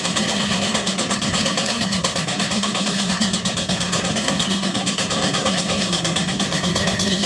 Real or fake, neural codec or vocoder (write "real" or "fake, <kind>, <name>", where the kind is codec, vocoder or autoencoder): fake, codec, SNAC